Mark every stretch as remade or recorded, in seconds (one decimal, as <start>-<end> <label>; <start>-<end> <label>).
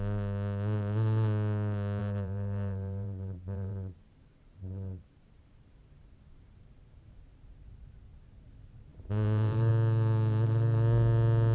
0.0-2.0 recorded; 2.0-7.2 remade; 7.2-8.9 recorded; 8.9-9.7 remade; 9.7-11.5 recorded